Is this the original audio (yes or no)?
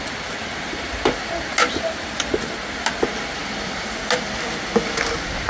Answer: yes